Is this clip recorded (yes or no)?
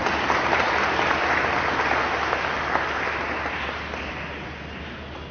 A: yes